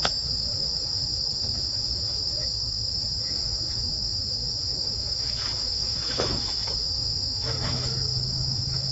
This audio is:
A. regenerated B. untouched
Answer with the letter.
A